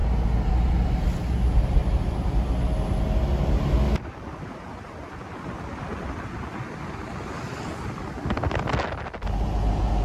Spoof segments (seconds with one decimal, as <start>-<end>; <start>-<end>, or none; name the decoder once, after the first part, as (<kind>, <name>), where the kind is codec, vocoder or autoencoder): none